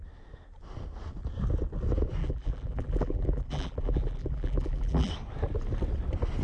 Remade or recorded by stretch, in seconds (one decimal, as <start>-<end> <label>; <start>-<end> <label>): 0.0-2.2 recorded; 2.2-5.1 remade; 5.1-6.4 recorded